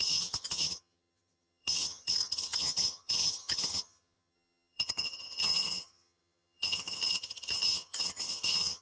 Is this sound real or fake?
fake